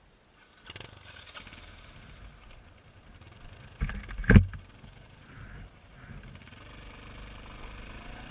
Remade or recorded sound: recorded